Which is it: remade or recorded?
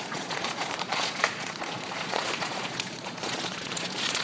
remade